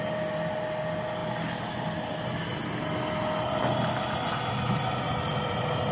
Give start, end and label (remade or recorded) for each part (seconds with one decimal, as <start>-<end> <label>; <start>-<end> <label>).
0.0-5.9 recorded